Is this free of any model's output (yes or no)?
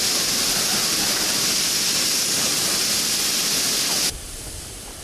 yes